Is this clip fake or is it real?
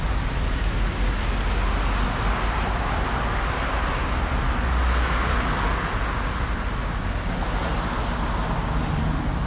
real